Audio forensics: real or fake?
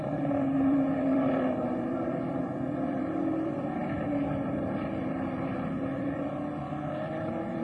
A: fake